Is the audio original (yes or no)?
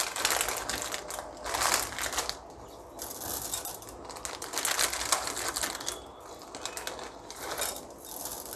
yes